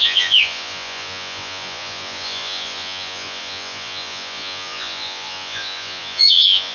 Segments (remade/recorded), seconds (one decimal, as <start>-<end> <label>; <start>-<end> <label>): 0.0-6.7 remade